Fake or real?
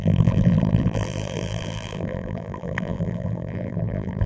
fake